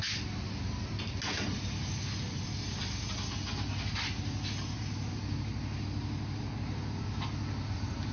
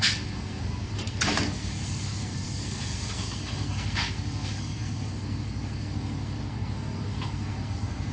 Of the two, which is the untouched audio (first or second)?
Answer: first